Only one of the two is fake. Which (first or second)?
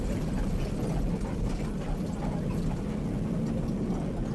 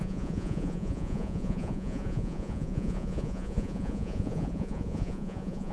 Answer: second